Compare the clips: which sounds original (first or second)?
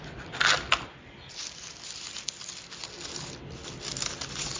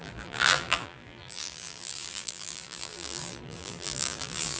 first